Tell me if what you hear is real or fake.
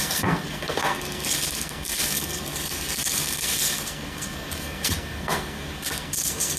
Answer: fake